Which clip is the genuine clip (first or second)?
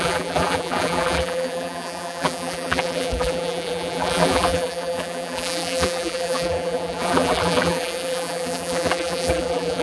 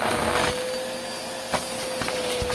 second